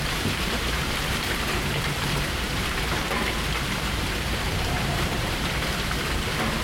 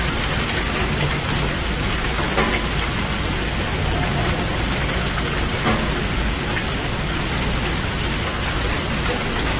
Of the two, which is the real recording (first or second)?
second